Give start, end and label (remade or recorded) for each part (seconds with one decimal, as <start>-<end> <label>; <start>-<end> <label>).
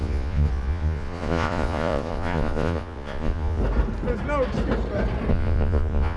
0.0-3.6 remade; 3.6-5.3 recorded; 5.3-6.2 remade